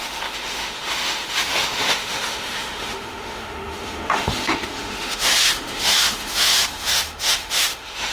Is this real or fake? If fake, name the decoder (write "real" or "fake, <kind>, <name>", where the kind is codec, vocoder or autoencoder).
fake, autoencoder, DAC-VAE